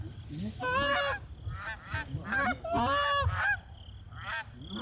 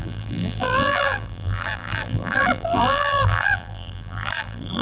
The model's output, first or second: second